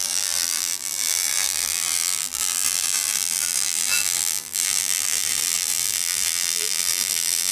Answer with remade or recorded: remade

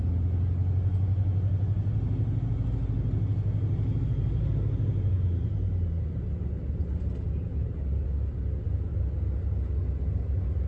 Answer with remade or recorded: recorded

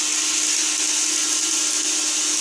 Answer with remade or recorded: recorded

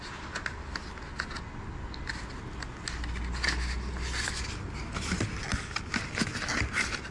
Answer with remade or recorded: recorded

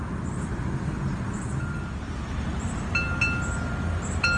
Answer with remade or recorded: recorded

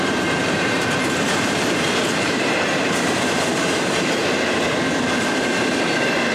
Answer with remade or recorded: remade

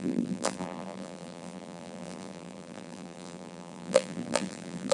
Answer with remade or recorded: remade